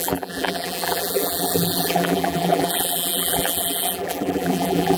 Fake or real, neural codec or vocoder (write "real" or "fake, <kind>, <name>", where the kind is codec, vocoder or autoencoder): fake, vocoder, BigVGAN v2